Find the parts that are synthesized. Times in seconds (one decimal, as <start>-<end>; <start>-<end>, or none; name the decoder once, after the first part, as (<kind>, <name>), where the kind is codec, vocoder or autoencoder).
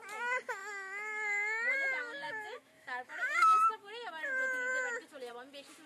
0.6-4.1 (autoencoder, DAC-VAE)